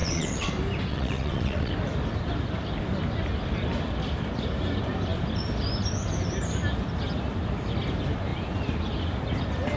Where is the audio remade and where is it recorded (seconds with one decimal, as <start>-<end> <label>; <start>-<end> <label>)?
0.0-0.5 remade; 0.5-0.9 recorded; 0.9-1.7 remade; 1.7-9.8 recorded